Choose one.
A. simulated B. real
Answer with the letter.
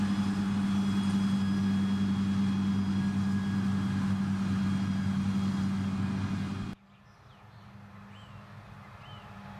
B